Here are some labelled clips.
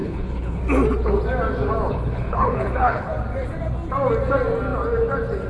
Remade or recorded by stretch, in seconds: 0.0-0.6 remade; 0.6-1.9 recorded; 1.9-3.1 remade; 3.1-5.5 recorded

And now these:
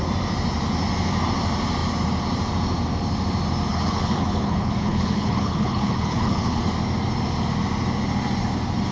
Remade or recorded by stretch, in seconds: 0.0-3.7 recorded; 3.7-6.7 remade; 6.7-8.9 recorded

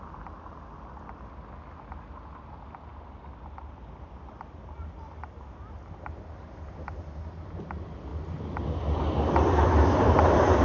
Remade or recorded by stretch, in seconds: 0.0-10.6 recorded

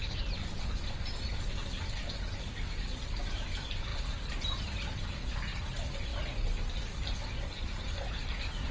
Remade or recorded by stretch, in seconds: 0.0-8.7 recorded